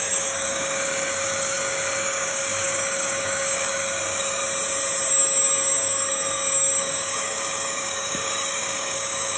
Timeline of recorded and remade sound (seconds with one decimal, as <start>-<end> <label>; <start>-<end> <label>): 0.0-4.4 remade; 4.4-5.1 recorded; 5.1-9.4 remade